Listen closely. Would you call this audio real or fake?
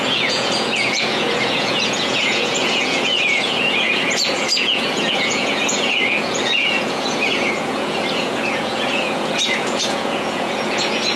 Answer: fake